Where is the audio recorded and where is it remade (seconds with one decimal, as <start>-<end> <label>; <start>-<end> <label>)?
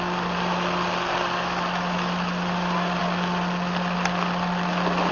0.0-5.1 recorded